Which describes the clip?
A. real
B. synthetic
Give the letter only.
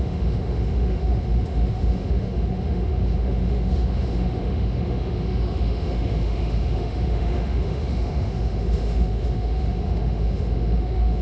B